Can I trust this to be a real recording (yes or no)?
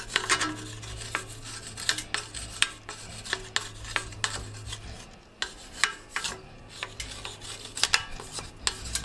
yes